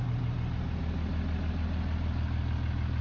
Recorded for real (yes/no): yes